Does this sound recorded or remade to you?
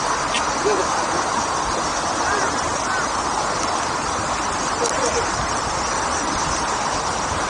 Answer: recorded